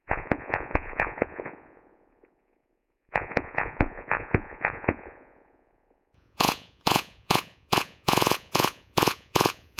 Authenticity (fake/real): fake